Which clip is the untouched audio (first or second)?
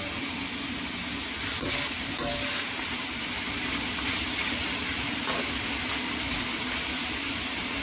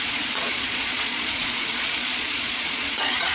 first